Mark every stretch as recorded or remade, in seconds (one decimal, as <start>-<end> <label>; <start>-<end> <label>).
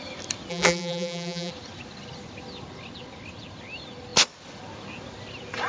0.0-0.5 recorded; 0.5-1.5 remade; 1.5-5.7 recorded